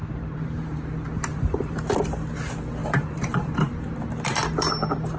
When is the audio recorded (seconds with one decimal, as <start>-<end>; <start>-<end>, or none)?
0.9-1.3; 1.9-2.8; 4.1-5.2